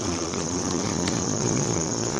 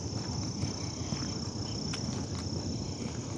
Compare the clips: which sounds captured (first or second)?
second